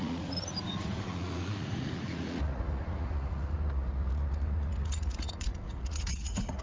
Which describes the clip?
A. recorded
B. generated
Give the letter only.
B